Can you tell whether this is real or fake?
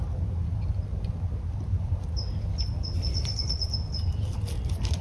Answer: real